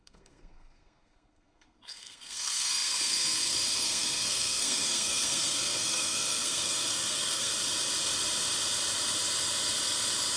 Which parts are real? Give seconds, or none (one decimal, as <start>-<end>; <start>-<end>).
7.5-10.4